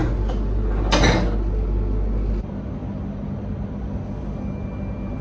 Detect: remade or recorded recorded